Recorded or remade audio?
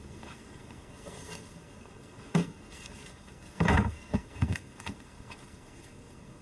remade